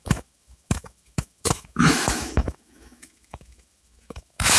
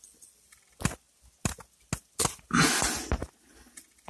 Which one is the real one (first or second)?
second